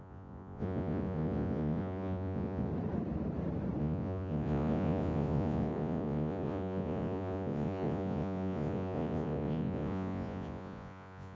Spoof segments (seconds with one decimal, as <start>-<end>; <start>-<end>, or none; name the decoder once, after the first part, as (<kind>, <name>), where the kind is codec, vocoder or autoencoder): 0.0-2.7 (vocoder, Vocos); 3.8-11.3